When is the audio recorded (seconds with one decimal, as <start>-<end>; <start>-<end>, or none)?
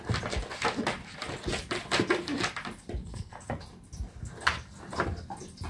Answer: 0.0-3.0; 3.6-5.7